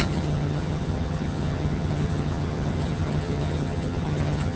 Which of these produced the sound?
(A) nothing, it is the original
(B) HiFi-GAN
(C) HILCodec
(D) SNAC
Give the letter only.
B